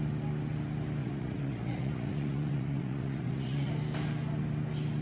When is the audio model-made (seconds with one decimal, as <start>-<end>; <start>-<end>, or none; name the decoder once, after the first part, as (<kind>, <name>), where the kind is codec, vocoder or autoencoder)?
1.0-3.7 (vocoder, Vocos)